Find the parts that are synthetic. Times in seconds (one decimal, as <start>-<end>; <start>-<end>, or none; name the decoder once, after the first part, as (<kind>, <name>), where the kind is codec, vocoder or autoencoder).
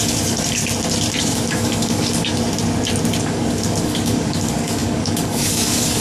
0.0-0.6 (codec, DAC); 1.2-2.3; 3.2-6.0